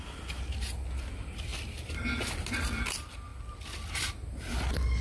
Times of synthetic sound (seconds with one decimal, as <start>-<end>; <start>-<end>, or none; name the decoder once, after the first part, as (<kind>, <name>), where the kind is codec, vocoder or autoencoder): none